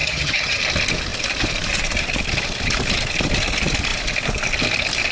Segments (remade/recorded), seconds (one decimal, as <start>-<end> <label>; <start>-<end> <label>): 0.0-0.6 remade; 0.6-5.1 recorded